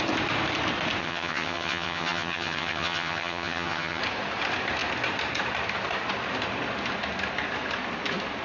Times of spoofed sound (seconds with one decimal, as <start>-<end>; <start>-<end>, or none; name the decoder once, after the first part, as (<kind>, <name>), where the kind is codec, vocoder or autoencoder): 1.0-4.0 (vocoder, HiFi-GAN)